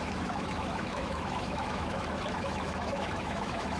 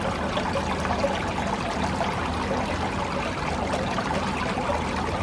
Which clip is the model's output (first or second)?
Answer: first